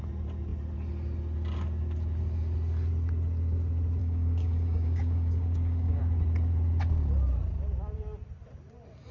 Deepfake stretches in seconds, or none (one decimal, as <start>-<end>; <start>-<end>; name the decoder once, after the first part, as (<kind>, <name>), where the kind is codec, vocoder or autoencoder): 4.0-6.0 (codec, DAC)